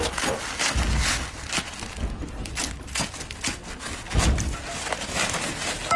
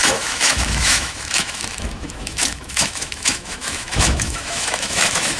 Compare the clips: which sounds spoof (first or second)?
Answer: second